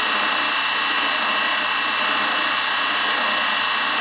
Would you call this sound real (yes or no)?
yes